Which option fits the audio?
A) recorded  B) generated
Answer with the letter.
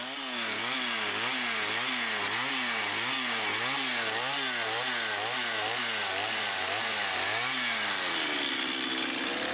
A